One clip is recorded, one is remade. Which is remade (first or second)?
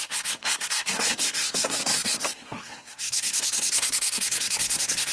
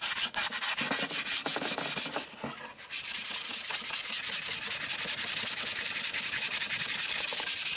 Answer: first